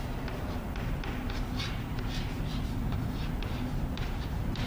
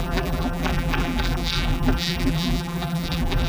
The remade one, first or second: second